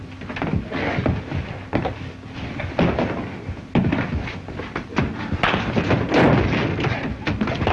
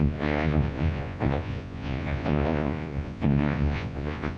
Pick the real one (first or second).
first